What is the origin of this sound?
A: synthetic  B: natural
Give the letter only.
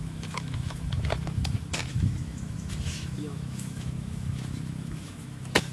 A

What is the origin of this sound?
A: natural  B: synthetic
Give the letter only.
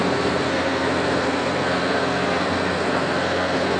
B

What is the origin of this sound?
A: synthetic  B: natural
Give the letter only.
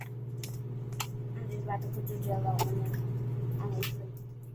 B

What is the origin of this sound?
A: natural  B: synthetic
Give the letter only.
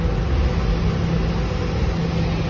A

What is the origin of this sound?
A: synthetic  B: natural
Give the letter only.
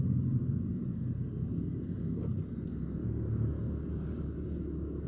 B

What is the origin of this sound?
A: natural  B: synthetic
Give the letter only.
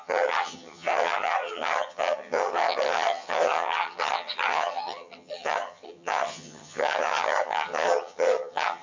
B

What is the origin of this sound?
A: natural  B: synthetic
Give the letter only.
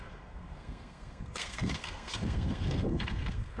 B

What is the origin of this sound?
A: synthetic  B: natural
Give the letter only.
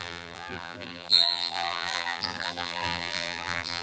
A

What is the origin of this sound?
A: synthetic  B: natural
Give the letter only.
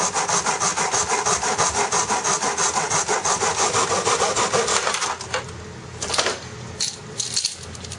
B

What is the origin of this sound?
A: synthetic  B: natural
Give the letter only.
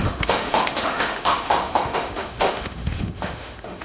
A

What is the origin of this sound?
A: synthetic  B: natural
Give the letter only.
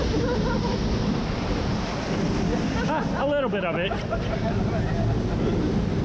B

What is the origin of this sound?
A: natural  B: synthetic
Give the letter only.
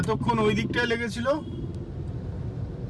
A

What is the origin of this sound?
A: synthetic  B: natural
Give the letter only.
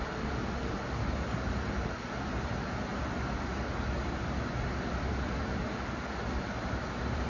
B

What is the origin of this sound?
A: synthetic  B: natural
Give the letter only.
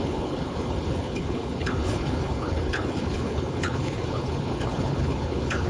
A